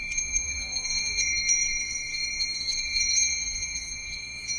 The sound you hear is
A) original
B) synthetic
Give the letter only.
B